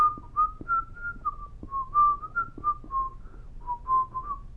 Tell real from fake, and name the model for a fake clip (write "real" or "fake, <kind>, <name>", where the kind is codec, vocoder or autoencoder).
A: real